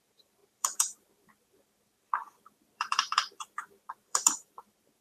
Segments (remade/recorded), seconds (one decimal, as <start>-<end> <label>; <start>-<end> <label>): 0.0-5.0 remade